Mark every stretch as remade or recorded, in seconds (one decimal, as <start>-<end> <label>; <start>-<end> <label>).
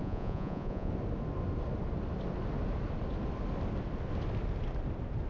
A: 0.0-0.9 remade; 0.9-5.3 recorded